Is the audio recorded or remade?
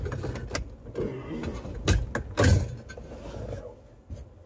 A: recorded